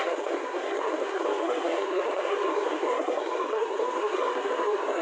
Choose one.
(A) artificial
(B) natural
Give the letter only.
A